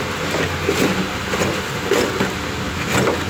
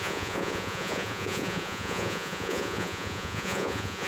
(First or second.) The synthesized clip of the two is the second